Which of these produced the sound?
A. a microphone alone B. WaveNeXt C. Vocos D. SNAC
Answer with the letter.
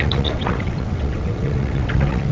B